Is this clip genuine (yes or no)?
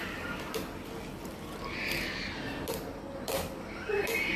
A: yes